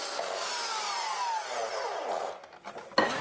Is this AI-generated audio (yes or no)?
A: no